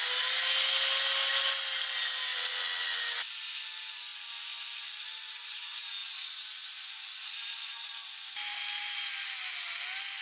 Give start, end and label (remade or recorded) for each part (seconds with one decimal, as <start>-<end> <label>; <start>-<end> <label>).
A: 0.0-2.3 recorded; 2.3-3.0 remade; 3.0-10.2 recorded